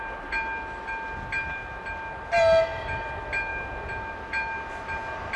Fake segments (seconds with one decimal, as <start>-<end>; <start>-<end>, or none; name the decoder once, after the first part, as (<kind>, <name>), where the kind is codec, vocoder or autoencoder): none